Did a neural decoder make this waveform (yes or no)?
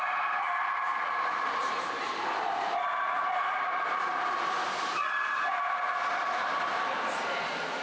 yes